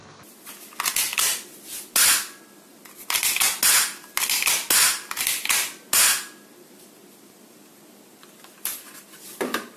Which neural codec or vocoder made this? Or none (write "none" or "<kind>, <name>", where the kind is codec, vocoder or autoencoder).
none